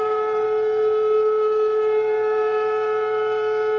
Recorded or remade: remade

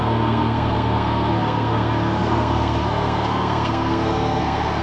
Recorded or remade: remade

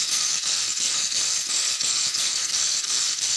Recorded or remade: remade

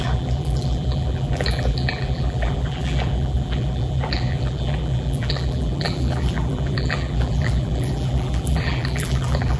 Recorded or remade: remade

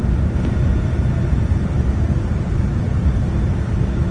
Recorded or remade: remade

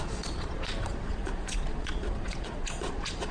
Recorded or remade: remade